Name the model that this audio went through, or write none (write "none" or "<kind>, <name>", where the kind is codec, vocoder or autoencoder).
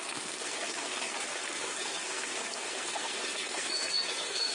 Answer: codec, SNAC